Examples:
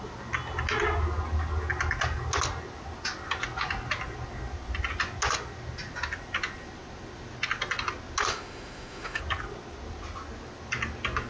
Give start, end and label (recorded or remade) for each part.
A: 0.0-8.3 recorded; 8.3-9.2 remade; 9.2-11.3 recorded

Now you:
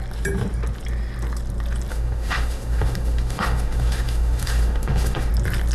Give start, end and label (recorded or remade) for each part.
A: 0.0-1.9 recorded; 1.9-5.3 remade; 5.3-5.7 recorded

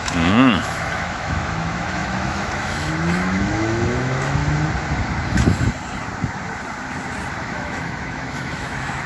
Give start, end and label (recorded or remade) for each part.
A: 0.0-4.4 remade; 4.4-7.3 recorded; 7.3-9.1 remade

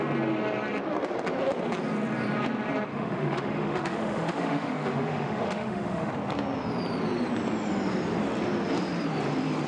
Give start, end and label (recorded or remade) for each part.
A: 0.0-2.9 recorded; 2.9-6.1 remade; 6.1-9.7 recorded